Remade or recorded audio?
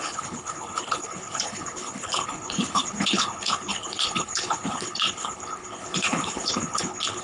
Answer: remade